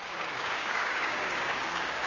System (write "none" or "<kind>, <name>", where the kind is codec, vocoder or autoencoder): codec, DAC